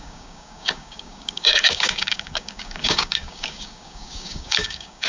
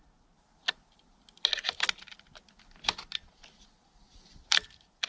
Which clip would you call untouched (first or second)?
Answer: second